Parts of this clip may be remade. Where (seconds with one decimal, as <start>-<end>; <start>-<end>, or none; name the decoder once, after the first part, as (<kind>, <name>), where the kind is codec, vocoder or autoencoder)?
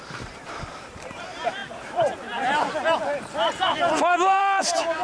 0.0-5.0 (vocoder, BigVGAN v2)